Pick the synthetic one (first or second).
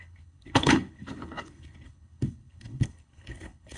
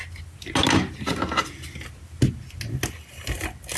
first